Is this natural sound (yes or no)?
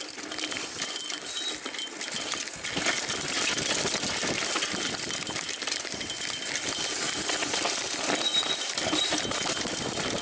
yes